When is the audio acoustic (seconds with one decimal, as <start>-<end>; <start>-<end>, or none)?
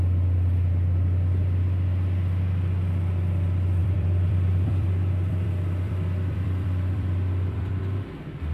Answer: 0.0-3.8; 7.8-8.5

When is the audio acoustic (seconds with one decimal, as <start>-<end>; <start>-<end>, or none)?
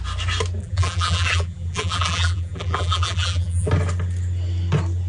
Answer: 0.0-0.6; 3.7-5.1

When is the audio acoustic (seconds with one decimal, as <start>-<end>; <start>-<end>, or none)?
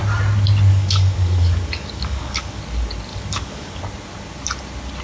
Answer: 0.0-0.7; 2.6-3.1; 3.8-5.0